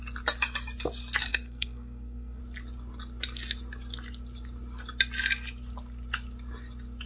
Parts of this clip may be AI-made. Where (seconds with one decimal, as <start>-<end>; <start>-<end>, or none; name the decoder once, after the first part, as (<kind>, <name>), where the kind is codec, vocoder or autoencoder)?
1.3-2.4 (codec, SNAC)

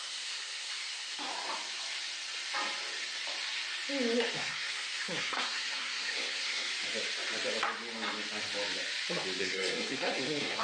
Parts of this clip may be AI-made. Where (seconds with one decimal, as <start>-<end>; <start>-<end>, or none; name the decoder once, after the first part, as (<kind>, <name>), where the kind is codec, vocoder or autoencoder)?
0.0-1.3 (codec, SNAC); 4.3-6.7; 9.4-10.6

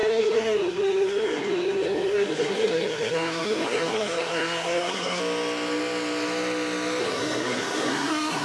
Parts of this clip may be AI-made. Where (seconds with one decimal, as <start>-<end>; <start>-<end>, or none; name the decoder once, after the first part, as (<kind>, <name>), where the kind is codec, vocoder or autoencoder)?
0.0-5.2 (codec, SNAC); 7.0-8.4

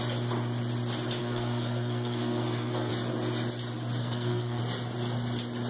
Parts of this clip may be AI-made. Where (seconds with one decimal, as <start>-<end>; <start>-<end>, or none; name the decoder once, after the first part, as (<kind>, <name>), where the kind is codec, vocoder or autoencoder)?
1.2-2.9 (codec, SNAC); 4.0-4.6

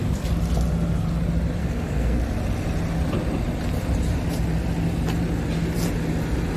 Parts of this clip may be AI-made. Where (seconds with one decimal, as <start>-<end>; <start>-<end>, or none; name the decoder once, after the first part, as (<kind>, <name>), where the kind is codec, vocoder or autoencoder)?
1.6-2.2 (codec, SNAC)

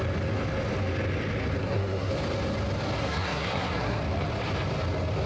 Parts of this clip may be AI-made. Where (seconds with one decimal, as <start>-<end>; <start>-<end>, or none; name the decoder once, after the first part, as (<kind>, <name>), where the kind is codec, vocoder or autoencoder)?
1.6-2.1 (codec, SNAC); 3.0-4.0

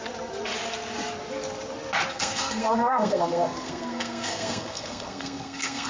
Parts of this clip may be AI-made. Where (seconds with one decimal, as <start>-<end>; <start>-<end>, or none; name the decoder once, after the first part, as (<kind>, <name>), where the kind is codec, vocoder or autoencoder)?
2.1-5.9 (codec, SNAC)